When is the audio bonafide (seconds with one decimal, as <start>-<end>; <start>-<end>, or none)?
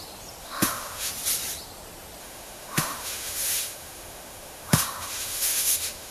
0.0-0.4; 1.1-2.2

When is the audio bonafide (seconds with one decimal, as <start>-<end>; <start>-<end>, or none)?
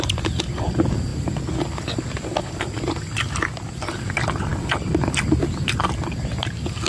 0.0-6.9